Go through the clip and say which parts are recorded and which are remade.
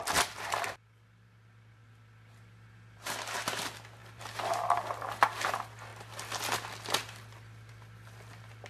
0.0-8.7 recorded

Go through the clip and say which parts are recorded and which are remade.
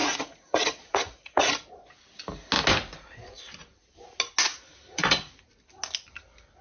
0.0-1.5 remade; 1.5-4.5 recorded; 4.5-5.3 remade; 5.3-6.6 recorded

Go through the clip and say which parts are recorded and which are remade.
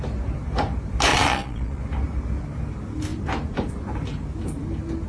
0.0-1.1 recorded; 1.1-1.8 remade; 1.8-5.1 recorded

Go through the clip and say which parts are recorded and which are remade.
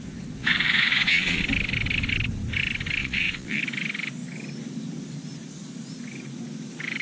0.0-0.4 recorded; 0.4-1.4 remade; 1.4-3.0 recorded; 3.0-3.6 remade; 3.6-7.0 recorded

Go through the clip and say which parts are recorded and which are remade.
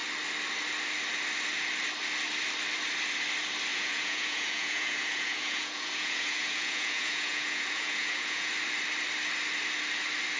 0.0-3.7 recorded; 3.7-8.5 remade; 8.5-10.4 recorded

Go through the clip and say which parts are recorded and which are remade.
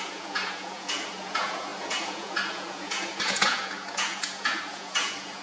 0.0-5.4 remade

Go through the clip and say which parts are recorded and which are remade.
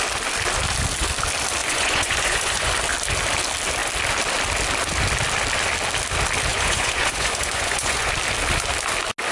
0.0-1.6 recorded; 1.6-2.7 remade; 2.7-6.5 recorded; 6.5-8.1 remade; 8.1-9.3 recorded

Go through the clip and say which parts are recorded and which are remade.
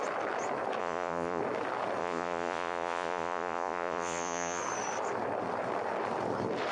0.0-0.8 recorded; 0.8-1.4 remade; 1.4-2.0 recorded; 2.0-4.6 remade; 4.6-6.7 recorded